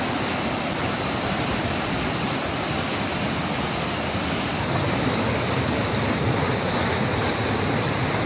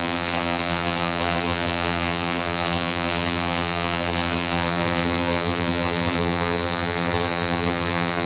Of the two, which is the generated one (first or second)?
second